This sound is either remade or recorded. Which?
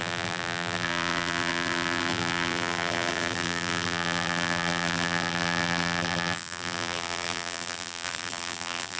remade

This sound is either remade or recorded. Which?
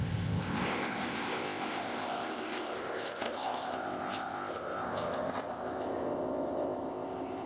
remade